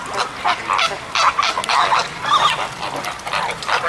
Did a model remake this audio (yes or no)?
no